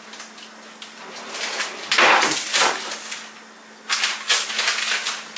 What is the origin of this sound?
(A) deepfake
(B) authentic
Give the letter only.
B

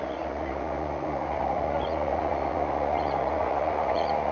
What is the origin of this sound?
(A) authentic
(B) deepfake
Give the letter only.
B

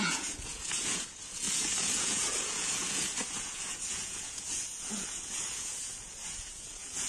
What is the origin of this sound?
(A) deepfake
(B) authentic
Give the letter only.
A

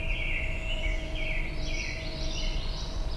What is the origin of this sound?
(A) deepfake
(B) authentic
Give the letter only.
A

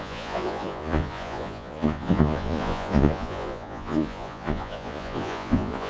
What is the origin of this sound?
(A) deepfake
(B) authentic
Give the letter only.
A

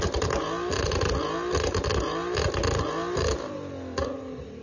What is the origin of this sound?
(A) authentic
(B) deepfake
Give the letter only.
A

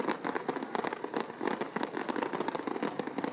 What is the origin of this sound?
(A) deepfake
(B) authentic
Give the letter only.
B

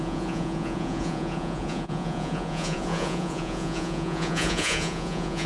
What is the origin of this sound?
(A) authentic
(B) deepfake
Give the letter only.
B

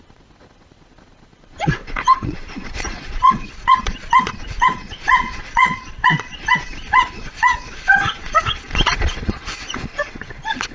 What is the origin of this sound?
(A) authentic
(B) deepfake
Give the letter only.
B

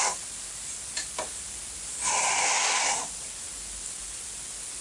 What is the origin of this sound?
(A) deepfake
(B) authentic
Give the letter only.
B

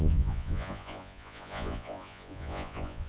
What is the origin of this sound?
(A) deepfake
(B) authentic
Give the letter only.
A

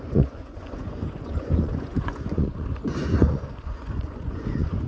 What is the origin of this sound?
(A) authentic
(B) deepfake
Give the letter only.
B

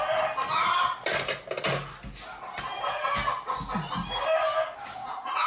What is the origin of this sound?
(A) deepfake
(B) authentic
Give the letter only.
B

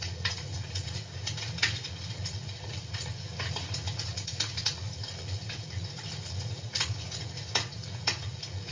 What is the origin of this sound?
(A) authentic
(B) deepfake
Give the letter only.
B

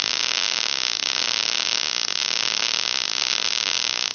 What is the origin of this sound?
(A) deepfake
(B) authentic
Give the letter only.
B